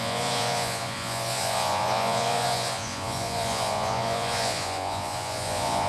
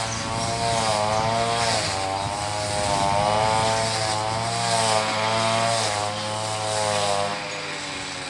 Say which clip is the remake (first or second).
first